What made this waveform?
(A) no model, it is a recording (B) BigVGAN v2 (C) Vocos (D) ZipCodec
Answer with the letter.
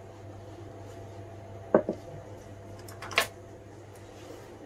A